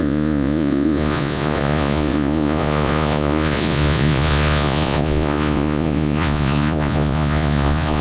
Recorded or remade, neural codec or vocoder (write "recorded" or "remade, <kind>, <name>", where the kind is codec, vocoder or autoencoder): remade, vocoder, Vocos